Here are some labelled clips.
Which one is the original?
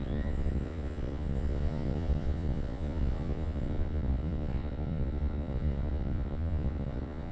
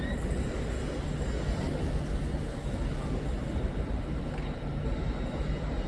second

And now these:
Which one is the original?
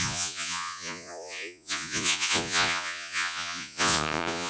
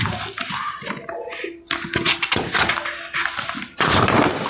second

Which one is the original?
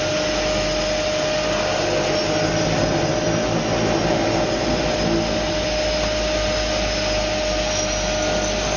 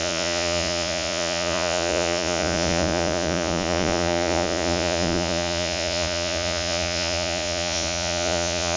first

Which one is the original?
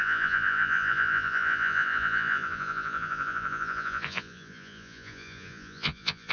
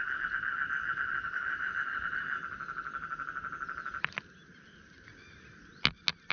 second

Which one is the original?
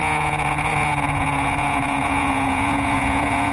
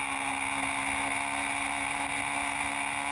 second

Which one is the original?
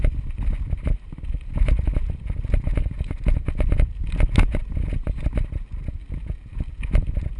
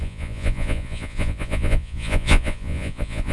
first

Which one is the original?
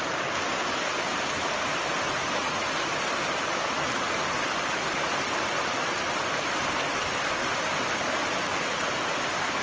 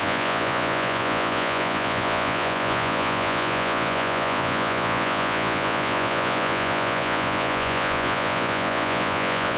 first